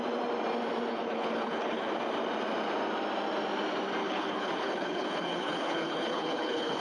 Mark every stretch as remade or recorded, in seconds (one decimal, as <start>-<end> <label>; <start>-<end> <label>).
0.0-0.9 recorded; 0.9-1.9 remade; 1.9-4.0 recorded; 4.0-6.8 remade